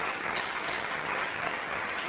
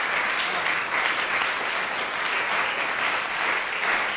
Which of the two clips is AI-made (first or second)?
first